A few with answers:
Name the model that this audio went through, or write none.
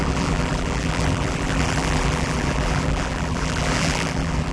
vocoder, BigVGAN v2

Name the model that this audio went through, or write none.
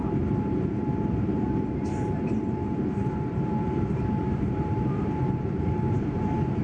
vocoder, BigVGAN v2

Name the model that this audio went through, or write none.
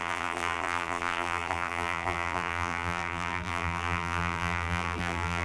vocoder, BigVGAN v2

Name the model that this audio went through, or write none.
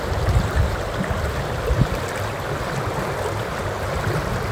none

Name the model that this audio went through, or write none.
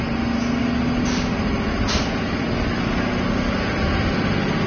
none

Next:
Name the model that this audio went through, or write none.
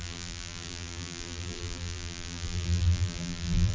vocoder, BigVGAN v2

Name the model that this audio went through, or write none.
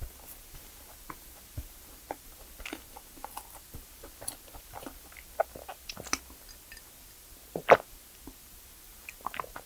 none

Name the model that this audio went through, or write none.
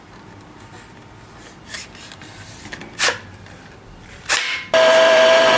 vocoder, BigVGAN v2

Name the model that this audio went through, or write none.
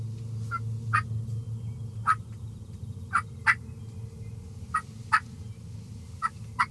none